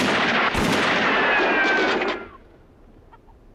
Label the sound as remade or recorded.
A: recorded